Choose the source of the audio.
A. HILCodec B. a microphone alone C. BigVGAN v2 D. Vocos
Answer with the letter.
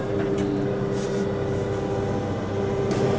B